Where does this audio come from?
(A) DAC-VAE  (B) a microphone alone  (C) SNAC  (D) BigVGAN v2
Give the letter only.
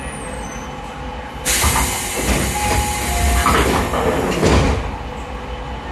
B